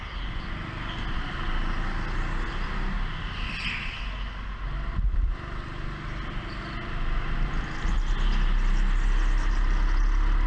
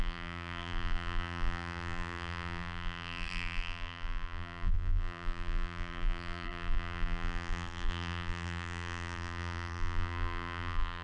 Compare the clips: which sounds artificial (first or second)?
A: second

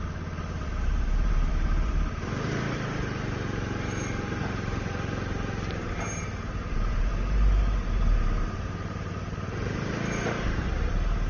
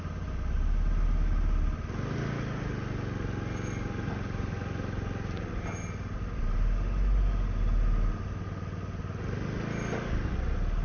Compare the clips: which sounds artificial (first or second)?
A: first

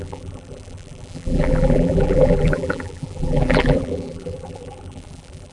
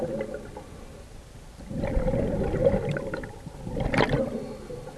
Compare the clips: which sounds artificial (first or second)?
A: first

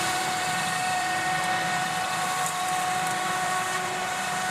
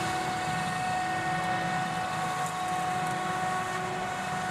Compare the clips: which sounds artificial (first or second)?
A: first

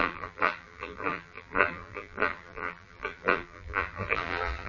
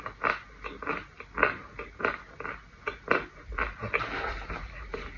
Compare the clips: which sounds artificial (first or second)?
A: first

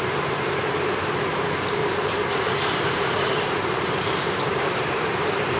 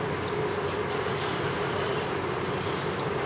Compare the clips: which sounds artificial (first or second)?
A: first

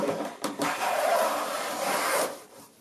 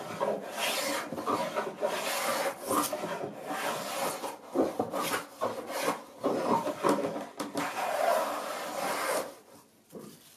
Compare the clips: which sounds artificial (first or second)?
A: first